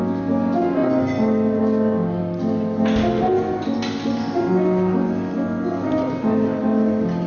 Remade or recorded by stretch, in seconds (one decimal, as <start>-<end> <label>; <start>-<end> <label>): 0.0-7.3 recorded

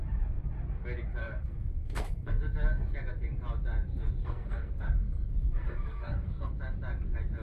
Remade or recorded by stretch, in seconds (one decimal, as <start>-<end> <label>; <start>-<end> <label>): 0.0-1.2 recorded; 1.2-2.4 remade; 2.4-4.2 recorded; 4.2-6.5 remade; 6.5-7.4 recorded

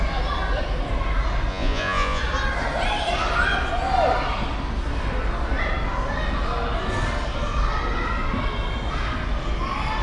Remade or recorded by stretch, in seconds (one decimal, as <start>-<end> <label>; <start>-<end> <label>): 0.0-1.5 recorded; 1.5-2.2 remade; 2.2-10.0 recorded